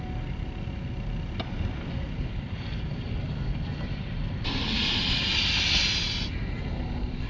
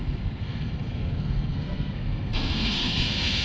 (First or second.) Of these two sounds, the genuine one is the first